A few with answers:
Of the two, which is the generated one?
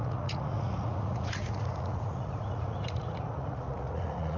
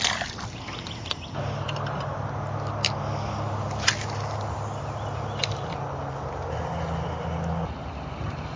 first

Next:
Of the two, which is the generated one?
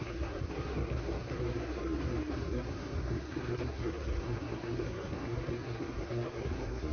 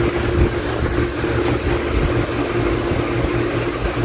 first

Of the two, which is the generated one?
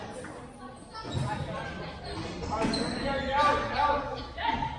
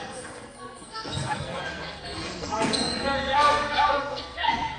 second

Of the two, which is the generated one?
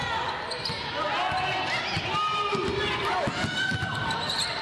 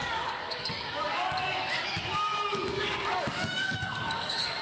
second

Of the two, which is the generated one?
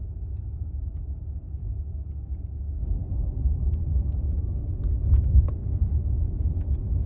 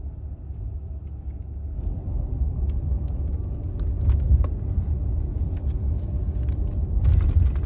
first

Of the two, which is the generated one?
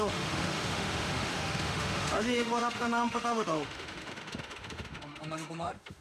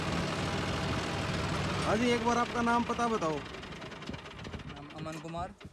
first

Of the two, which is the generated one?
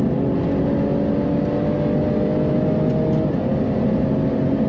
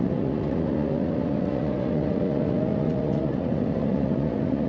second